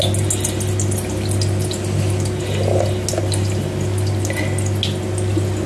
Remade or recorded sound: recorded